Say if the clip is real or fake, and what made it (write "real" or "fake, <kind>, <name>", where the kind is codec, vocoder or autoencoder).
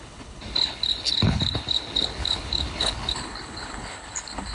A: fake, codec, HILCodec